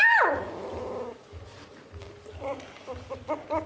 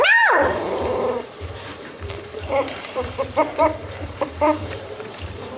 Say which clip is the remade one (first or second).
second